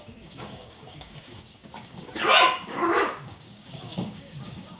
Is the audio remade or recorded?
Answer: remade